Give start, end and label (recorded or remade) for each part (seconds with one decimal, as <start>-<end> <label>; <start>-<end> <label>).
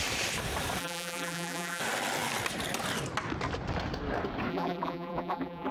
0.0-0.8 recorded; 0.8-1.8 remade; 1.8-4.5 recorded; 4.5-5.7 remade